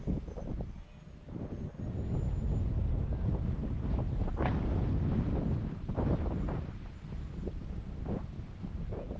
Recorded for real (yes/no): yes